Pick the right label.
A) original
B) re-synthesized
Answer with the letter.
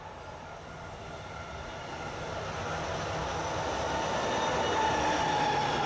A